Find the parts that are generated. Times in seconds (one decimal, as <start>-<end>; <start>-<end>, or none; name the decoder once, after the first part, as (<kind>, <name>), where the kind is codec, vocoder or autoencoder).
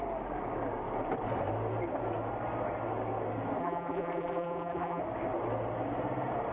3.6-5.0 (vocoder, BigVGAN v2)